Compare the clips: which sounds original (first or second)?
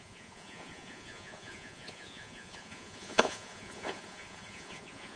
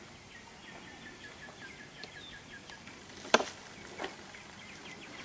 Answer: second